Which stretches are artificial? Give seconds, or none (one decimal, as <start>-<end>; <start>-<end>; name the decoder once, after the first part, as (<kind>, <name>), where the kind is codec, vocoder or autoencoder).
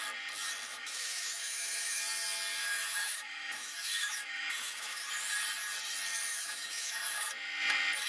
0.7-2.0 (autoencoder, DAC-VAE); 2.6-5.1; 6.3-7.3